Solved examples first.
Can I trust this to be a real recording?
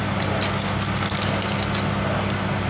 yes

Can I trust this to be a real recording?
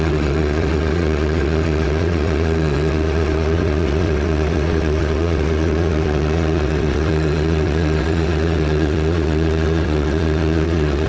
no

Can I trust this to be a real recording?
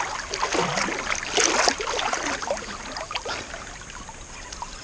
yes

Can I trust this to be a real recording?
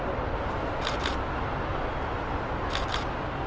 yes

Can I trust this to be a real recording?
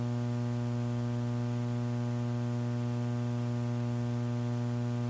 yes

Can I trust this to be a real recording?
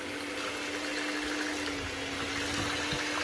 yes